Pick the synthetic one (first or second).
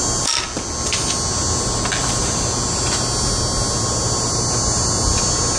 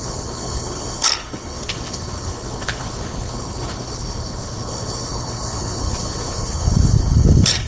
second